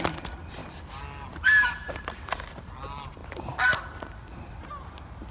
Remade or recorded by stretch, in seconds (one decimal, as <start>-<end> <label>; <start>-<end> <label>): 0.0-5.3 recorded